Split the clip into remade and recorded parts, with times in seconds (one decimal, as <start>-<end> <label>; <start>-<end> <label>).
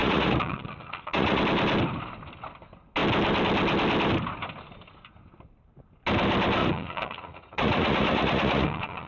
0.0-1.4 remade; 1.4-6.6 recorded; 6.6-9.1 remade